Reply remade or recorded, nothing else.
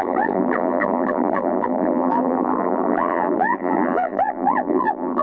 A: remade